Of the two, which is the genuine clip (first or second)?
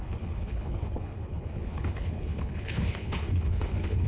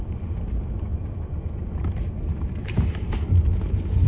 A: second